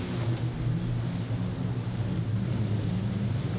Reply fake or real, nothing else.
real